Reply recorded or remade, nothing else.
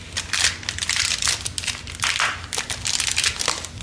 recorded